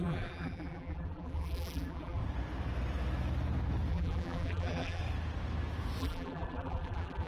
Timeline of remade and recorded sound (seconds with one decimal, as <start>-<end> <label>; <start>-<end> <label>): 0.0-2.2 remade; 2.2-3.9 recorded; 3.9-5.0 remade; 5.0-6.0 recorded; 6.0-7.3 remade